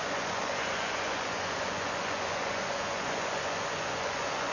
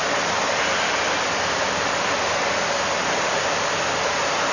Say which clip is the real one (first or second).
second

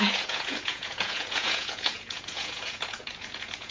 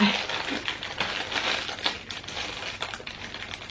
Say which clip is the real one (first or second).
second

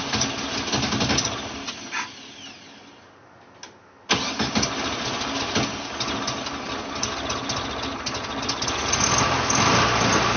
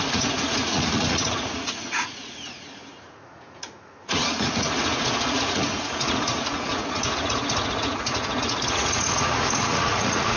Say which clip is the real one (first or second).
first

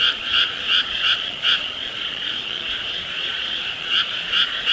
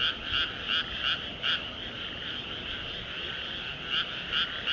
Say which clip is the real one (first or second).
second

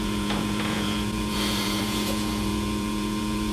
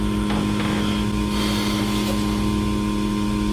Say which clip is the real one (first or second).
second